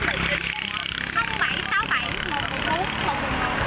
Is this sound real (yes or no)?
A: yes